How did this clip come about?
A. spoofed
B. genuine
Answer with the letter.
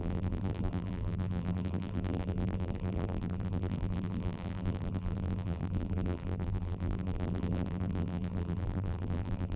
A